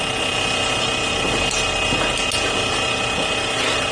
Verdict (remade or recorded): recorded